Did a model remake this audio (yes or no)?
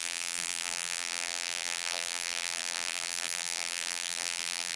yes